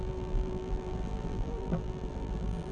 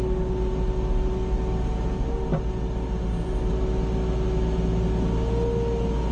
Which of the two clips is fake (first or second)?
first